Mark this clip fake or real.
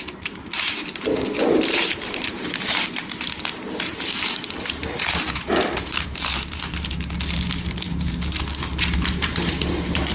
fake